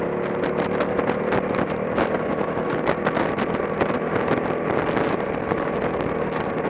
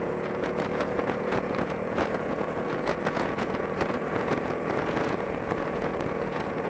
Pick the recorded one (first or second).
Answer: first